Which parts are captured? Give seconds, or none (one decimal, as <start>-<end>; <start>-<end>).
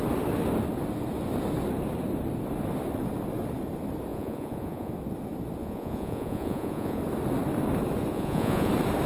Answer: 0.0-4.1; 4.9-5.6; 7.0-8.1; 8.7-9.1